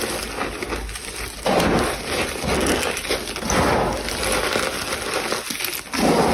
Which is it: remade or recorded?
recorded